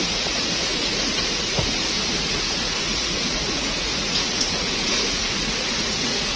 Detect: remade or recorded remade